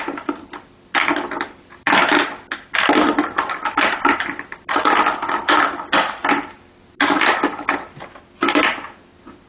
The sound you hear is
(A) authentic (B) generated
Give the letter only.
A